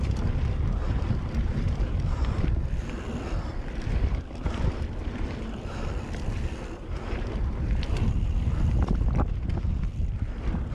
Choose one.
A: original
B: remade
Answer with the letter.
B